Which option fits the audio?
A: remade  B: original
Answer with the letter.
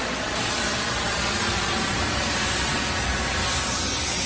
B